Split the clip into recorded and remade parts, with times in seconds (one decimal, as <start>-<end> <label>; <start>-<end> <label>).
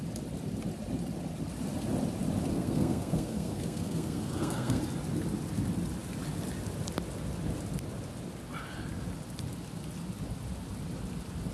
0.0-2.5 recorded; 2.5-4.8 remade; 4.8-11.5 recorded